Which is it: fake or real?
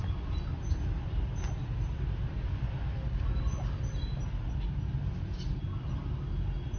real